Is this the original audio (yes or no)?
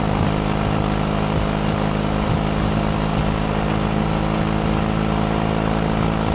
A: yes